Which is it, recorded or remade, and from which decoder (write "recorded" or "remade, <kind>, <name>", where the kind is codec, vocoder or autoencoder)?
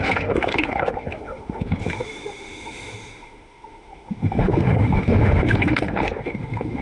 remade, autoencoder, DAC-VAE